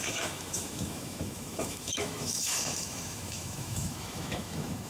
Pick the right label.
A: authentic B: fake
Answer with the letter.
B